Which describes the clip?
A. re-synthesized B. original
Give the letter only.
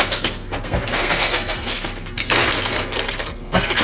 A